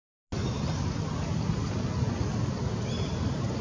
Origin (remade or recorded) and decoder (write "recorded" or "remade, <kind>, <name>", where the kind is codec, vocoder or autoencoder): recorded